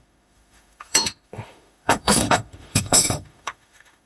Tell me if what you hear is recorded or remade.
remade